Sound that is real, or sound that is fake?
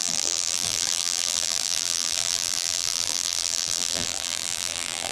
fake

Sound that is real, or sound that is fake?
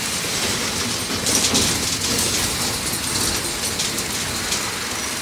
real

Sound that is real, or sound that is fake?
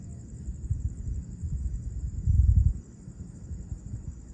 real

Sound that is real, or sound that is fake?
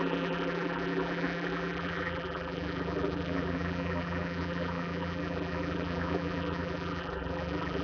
fake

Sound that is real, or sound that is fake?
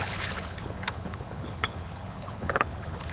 fake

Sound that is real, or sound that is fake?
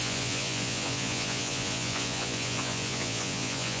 fake